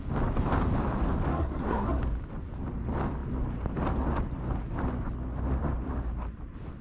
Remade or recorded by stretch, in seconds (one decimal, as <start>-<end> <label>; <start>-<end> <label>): 0.0-1.3 recorded; 1.3-2.0 remade; 2.0-6.8 recorded